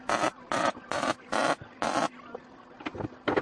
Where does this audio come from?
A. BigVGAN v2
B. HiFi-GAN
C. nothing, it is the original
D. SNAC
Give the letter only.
C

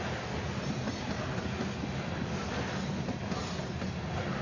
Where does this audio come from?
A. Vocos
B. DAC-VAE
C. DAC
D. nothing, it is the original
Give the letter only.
D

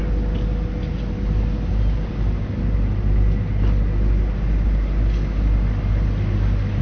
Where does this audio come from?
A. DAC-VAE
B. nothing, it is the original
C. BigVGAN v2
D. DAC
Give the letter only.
B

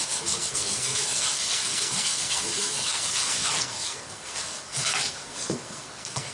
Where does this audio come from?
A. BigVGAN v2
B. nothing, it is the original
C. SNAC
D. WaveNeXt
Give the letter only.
C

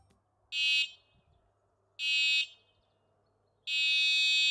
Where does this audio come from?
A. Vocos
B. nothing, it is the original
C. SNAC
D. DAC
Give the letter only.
B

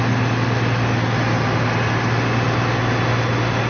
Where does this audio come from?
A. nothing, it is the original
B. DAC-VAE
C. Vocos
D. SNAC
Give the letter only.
A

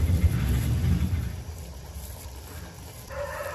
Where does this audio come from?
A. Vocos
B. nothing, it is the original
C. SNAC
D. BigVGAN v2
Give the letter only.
B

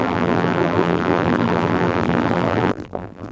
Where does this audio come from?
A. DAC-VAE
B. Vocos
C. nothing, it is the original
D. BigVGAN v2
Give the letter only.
D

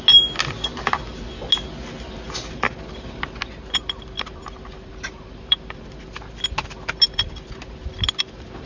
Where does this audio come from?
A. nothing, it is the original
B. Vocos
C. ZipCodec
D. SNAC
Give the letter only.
A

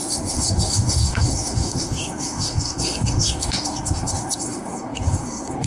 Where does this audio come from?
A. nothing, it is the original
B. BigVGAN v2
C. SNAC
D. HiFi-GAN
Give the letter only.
C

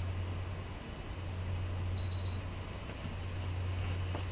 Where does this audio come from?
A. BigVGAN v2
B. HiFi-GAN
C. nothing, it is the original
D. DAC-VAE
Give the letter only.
C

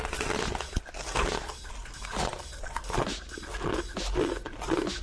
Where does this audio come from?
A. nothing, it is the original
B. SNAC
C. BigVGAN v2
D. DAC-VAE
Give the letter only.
A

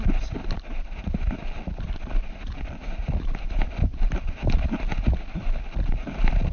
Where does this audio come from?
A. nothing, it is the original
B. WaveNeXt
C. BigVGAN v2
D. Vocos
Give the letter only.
A